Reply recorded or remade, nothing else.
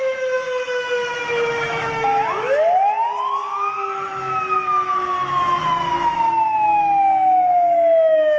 remade